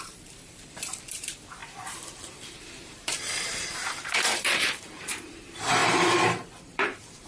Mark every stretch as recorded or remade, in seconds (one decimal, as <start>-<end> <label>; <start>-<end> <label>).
0.0-7.3 remade

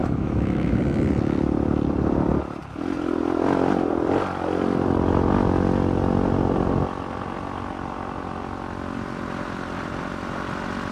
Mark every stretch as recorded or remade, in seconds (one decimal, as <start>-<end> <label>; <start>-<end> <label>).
0.0-0.8 remade; 0.8-10.9 recorded

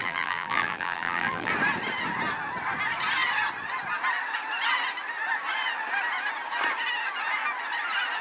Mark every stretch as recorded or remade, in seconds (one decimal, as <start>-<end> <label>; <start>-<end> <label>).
0.0-1.5 remade; 1.5-8.2 recorded

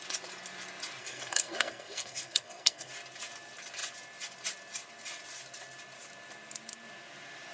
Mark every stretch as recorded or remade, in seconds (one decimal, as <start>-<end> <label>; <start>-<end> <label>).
0.0-1.0 recorded; 1.0-2.9 remade; 2.9-7.5 recorded

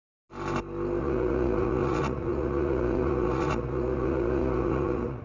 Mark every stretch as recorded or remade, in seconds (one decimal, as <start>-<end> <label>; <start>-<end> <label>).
0.0-1.0 recorded; 1.0-5.2 remade

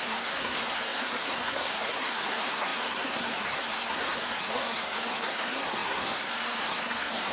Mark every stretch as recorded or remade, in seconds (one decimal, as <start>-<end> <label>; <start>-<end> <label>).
0.0-7.3 remade

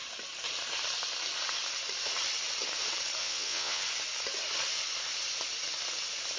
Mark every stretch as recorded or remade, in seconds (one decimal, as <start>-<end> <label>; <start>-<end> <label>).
0.0-3.2 recorded; 3.2-3.8 remade; 3.8-6.4 recorded